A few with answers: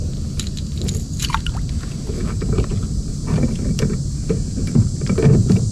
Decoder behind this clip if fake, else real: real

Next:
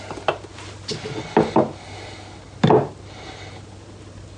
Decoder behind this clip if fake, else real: real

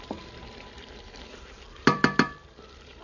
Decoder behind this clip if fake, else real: fake, vocoder, BigVGAN v2